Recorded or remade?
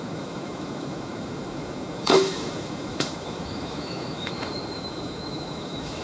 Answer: remade